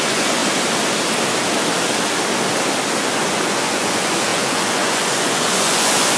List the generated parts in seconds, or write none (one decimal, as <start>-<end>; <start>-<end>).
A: 0.0-0.4; 3.0-6.2